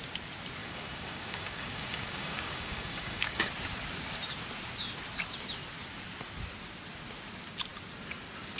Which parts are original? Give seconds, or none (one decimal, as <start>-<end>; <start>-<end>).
0.0-0.6; 3.5-8.6